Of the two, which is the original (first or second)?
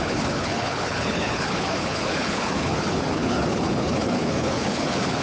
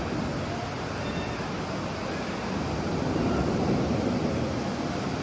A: second